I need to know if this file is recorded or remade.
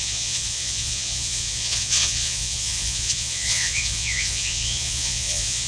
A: remade